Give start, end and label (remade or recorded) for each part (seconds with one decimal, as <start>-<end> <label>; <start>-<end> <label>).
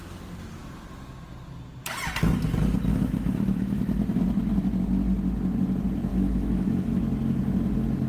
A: 0.0-2.9 recorded; 2.9-3.8 remade; 3.8-6.1 recorded; 6.1-7.0 remade; 7.0-8.1 recorded